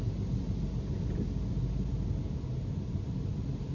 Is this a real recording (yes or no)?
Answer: yes